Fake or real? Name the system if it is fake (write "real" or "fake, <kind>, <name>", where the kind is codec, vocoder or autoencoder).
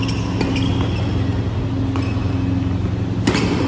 real